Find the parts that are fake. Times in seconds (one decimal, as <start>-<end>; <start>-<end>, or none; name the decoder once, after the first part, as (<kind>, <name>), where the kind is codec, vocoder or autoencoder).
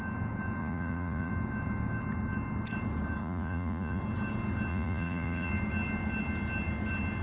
0.6-1.3 (vocoder, Vocos); 3.2-4.0; 4.7-5.5